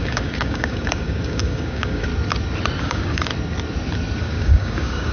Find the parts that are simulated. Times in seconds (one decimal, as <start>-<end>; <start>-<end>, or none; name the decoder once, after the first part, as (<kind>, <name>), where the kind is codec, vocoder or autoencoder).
0.0-2.1 (codec, DAC); 2.8-3.3; 4.2-5.1